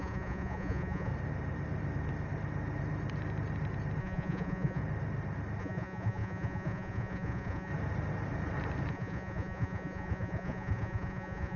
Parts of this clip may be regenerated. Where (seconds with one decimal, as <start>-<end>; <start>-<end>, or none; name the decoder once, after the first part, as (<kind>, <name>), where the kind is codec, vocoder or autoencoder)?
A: 0.0-1.1 (vocoder, Vocos); 4.0-4.8; 5.6-7.7; 8.9-11.6